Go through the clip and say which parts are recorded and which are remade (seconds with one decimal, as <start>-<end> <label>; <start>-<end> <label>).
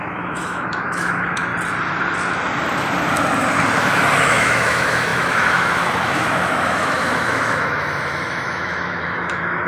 0.0-1.5 remade; 1.5-4.2 recorded; 4.2-9.7 remade